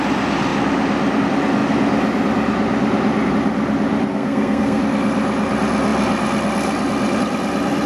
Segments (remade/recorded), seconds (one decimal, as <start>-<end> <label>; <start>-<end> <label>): 0.0-4.1 recorded; 4.1-4.8 remade; 4.8-7.9 recorded